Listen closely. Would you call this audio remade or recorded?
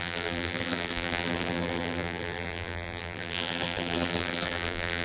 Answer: remade